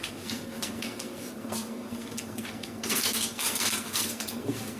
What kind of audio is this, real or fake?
fake